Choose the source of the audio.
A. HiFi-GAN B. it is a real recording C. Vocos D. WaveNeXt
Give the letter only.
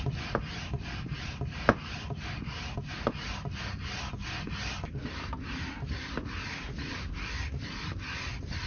B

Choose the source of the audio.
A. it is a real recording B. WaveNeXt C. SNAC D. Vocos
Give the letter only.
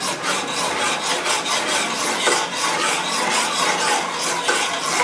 A